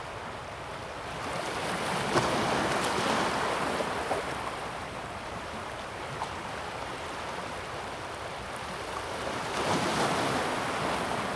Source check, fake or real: real